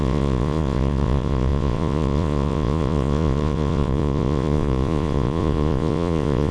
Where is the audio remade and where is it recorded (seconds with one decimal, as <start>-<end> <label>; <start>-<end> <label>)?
0.0-6.5 remade

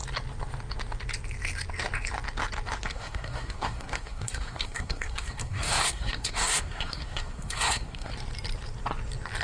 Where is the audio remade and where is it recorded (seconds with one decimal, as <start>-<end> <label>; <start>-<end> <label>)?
0.0-2.9 recorded; 2.9-8.1 remade; 8.1-9.4 recorded

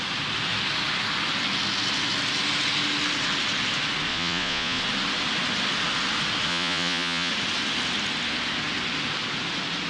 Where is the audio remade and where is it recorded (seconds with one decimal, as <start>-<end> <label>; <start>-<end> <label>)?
0.0-4.1 recorded; 4.1-4.8 remade; 4.8-6.5 recorded; 6.5-7.3 remade; 7.3-9.9 recorded